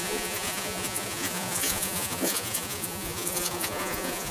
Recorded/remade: remade